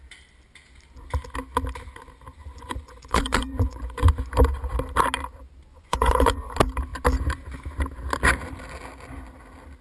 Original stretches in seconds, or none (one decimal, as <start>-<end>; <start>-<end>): 0.0-2.4; 4.1-5.7; 6.5-9.8